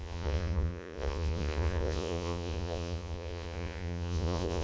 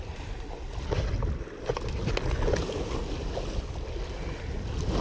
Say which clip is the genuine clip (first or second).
second